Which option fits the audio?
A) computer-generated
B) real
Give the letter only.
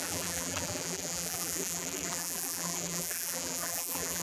A